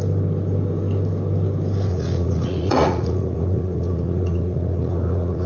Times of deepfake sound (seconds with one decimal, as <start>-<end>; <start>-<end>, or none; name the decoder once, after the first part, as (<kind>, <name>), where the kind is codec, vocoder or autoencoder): 1.9-5.5 (vocoder, Vocos)